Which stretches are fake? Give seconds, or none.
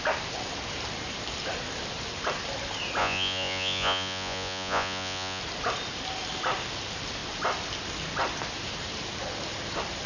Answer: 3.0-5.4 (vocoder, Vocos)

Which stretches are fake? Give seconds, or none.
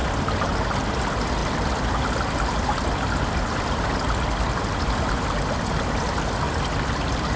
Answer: none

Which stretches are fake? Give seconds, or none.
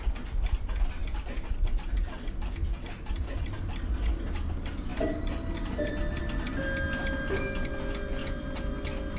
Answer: none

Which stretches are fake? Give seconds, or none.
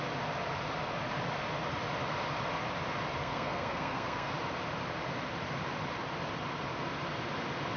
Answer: 3.2-4.3 (codec, SNAC)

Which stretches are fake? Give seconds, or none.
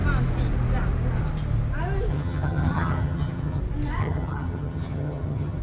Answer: 2.1-3.6 (vocoder, HiFi-GAN); 4.0-5.6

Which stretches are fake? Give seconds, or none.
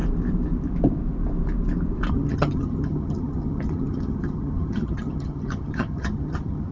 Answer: 2.1-6.7 (vocoder, HiFi-GAN)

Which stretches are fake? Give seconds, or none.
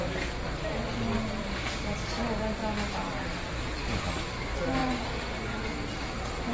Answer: none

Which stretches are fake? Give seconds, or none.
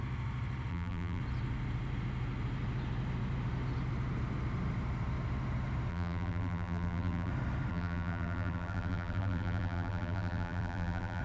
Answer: 0.7-1.2 (vocoder, BigVGAN v2); 5.9-7.3; 7.7-11.2